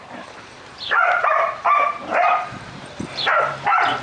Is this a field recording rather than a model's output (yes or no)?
no